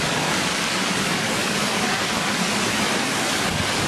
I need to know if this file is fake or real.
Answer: fake